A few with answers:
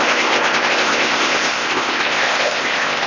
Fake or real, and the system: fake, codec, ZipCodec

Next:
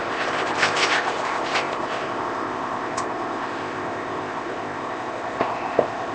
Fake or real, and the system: fake, codec, ZipCodec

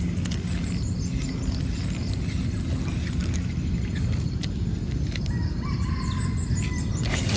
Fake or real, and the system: real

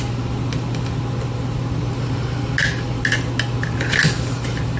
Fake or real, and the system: real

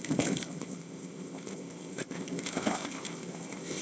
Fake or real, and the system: fake, codec, ZipCodec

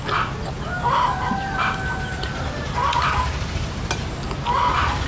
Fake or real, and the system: real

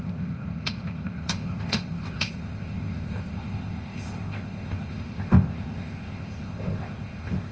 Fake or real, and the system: fake, codec, ZipCodec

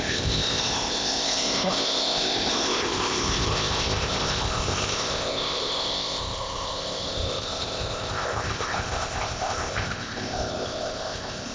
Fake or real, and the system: fake, codec, ZipCodec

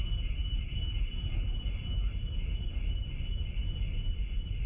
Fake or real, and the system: real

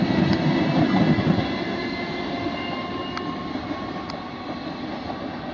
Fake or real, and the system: real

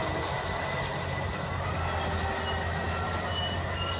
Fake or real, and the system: real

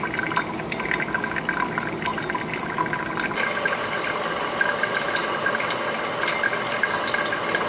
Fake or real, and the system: real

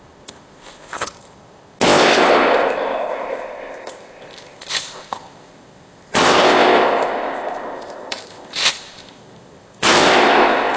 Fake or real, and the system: fake, codec, ZipCodec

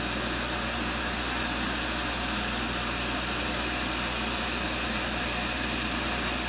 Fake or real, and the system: real